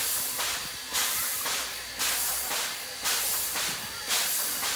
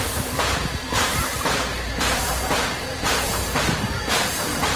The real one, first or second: first